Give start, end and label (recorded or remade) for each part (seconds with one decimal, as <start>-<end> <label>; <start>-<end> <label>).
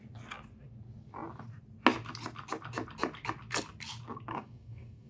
0.0-4.3 recorded; 4.3-5.1 remade